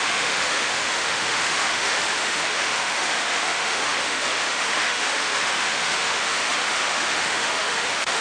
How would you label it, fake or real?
fake